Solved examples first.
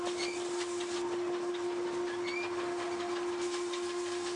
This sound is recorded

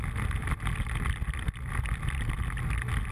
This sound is recorded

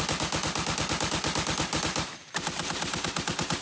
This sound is recorded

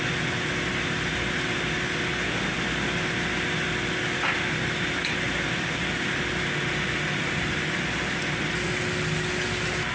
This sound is recorded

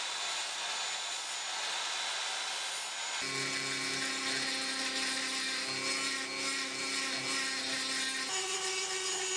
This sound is recorded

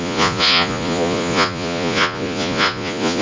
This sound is remade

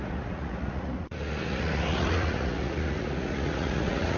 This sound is remade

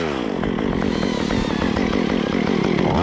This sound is recorded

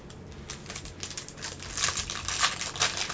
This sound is recorded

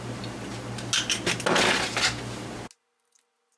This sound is recorded